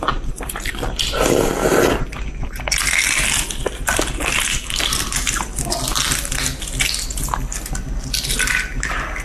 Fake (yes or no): no